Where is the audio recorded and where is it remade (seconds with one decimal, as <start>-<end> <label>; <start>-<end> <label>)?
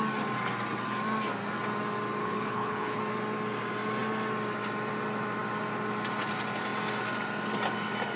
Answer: 0.0-2.2 recorded; 2.2-3.0 remade; 3.0-8.2 recorded